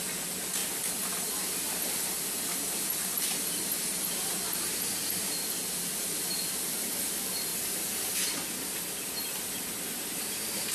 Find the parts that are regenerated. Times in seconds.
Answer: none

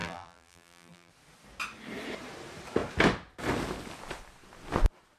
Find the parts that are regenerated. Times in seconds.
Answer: 0.0-1.1

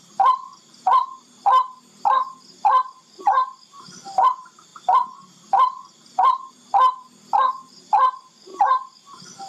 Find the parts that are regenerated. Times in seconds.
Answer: 0.5-3.2; 4.7-6.5

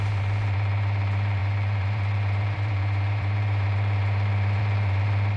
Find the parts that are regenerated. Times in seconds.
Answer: 0.0-5.4

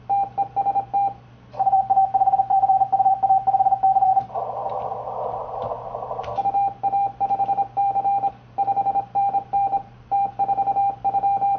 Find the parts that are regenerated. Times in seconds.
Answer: 0.0-11.6